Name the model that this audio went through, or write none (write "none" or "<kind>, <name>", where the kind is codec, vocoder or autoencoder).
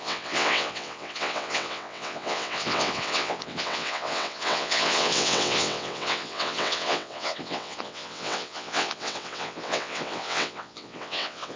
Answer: vocoder, WaveNeXt